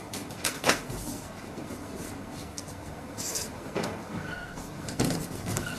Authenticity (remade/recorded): remade